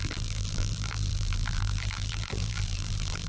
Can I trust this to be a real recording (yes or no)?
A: no